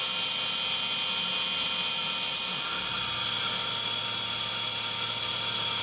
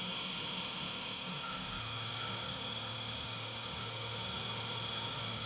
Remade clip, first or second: second